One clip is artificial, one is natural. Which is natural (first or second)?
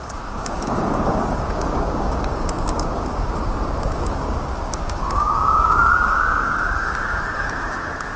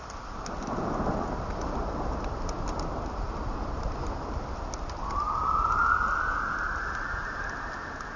second